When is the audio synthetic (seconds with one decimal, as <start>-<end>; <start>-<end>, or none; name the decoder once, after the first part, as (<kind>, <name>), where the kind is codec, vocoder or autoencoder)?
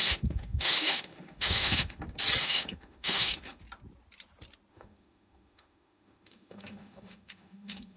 0.0-2.0 (autoencoder, DAC-VAE); 2.4-3.6; 4.7-8.0